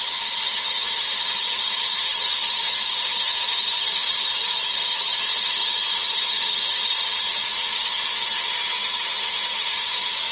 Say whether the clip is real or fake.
fake